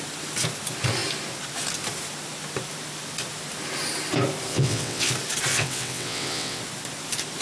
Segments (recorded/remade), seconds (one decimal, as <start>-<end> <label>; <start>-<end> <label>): 0.0-4.5 recorded; 4.5-5.1 remade; 5.1-5.5 recorded; 5.5-6.6 remade; 6.6-7.4 recorded